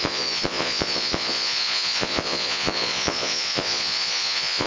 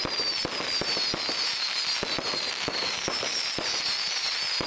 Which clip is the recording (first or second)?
second